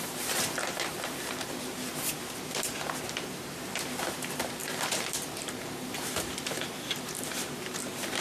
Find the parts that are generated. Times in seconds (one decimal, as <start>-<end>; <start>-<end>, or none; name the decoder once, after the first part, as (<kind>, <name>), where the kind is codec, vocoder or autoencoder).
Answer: 0.0-8.2 (vocoder, BigVGAN v2)